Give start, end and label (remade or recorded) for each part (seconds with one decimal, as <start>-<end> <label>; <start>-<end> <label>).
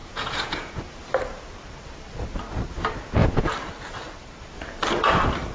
0.0-0.8 remade; 0.8-5.5 recorded